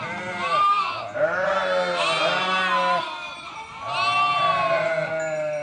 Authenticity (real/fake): real